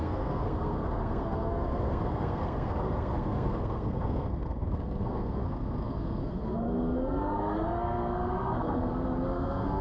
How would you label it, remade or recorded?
remade